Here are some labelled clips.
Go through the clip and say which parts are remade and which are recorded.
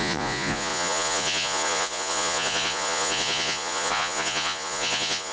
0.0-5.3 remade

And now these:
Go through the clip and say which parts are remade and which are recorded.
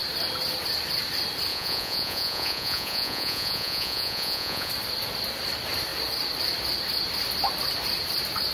0.0-1.5 recorded; 1.5-4.7 remade; 4.7-8.5 recorded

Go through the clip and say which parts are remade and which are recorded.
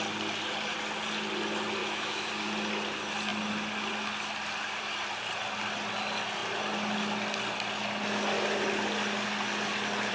0.0-1.8 recorded; 1.8-2.3 remade; 2.3-10.1 recorded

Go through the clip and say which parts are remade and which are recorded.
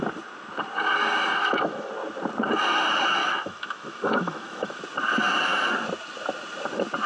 0.0-1.4 recorded; 1.4-1.9 remade; 1.9-3.2 recorded; 3.2-4.8 remade; 4.8-7.1 recorded